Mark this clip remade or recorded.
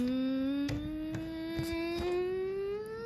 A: recorded